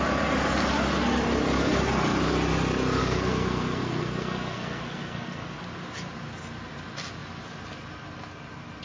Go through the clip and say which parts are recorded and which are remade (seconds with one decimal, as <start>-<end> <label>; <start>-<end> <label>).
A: 0.0-3.0 recorded; 3.0-5.6 remade; 5.6-8.8 recorded